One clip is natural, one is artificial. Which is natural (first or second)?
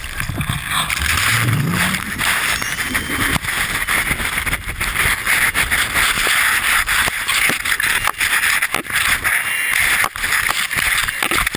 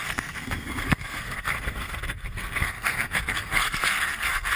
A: first